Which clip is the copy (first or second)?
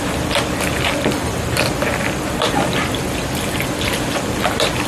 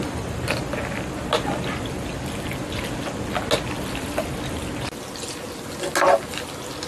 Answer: first